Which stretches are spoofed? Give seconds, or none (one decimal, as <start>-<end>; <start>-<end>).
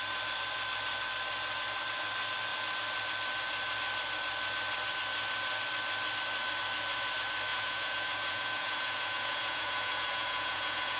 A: 7.5-11.0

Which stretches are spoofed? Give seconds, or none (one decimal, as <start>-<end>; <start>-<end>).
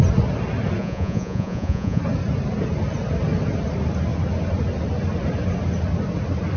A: 0.8-2.0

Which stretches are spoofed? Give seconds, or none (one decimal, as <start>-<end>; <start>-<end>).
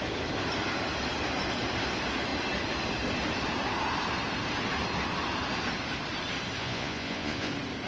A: 6.6-7.5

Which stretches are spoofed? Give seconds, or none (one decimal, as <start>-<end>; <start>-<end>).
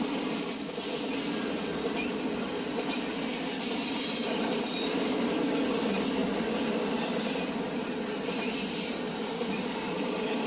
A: none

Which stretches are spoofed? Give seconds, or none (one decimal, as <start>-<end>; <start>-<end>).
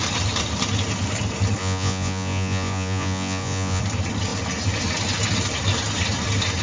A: 1.6-3.8